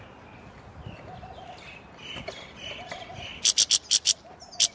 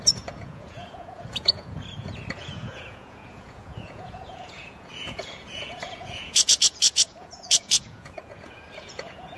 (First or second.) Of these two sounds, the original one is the first